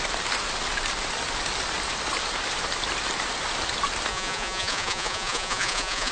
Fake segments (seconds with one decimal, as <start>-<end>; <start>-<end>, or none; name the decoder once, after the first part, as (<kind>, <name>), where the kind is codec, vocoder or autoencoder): 4.1-6.1 (vocoder, Vocos)